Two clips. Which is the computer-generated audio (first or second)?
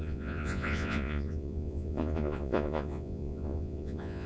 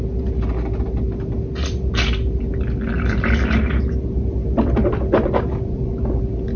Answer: first